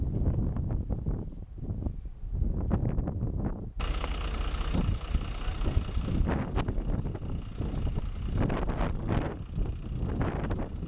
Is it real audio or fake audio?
real